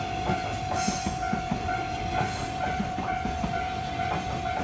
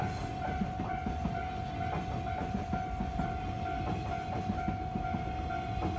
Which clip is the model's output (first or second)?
first